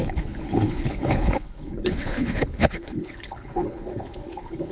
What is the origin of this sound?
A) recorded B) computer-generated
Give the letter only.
B